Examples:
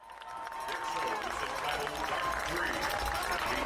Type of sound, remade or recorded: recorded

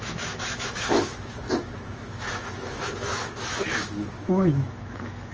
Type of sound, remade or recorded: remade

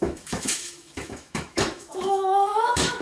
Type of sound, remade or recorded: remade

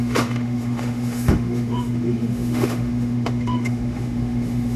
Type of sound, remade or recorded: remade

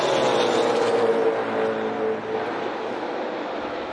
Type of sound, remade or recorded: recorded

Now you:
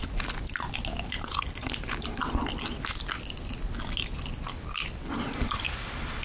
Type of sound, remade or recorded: recorded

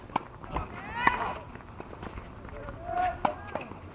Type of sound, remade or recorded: recorded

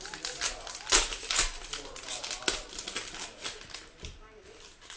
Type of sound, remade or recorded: recorded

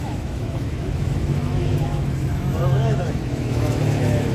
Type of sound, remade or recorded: remade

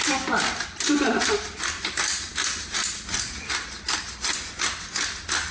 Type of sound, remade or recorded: recorded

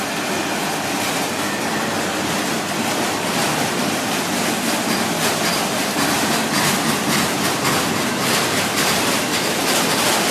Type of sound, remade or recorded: recorded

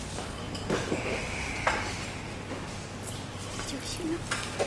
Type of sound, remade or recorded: recorded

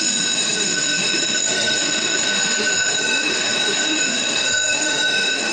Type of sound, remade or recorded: remade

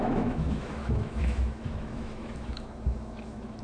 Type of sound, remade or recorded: remade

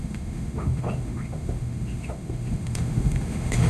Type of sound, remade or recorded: remade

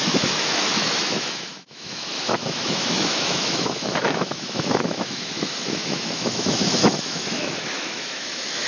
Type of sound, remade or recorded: remade